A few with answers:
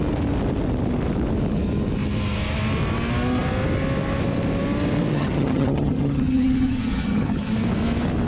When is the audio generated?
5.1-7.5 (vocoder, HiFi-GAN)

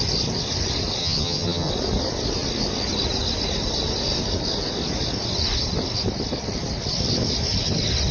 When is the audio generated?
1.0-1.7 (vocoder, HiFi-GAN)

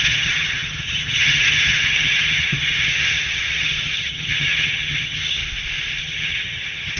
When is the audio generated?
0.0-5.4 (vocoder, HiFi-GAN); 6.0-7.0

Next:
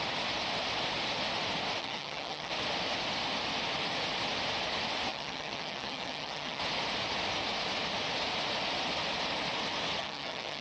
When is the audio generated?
1.8-2.5 (vocoder, HiFi-GAN); 5.1-6.6; 10.0-10.6

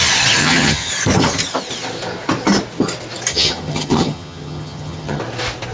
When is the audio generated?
0.4-0.9 (vocoder, HiFi-GAN); 3.3-5.2

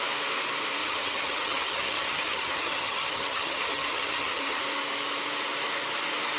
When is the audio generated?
0.8-4.6 (vocoder, HiFi-GAN)

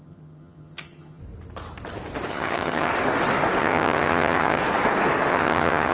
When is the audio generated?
0.0-1.2 (vocoder, HiFi-GAN); 2.3-2.9; 3.6-4.6; 5.3-5.9

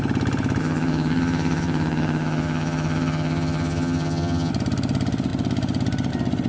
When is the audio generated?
0.6-4.5 (vocoder, HiFi-GAN)